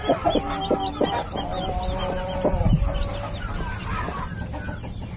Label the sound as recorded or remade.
recorded